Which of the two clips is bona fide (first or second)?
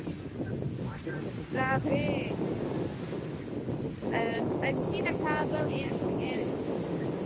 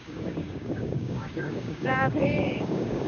first